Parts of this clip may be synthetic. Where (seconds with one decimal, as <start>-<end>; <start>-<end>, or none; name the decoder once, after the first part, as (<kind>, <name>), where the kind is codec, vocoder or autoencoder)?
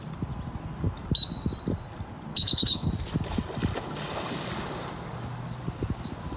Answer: 2.3-2.9 (codec, HILCodec)